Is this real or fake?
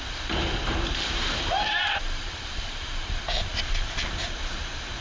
fake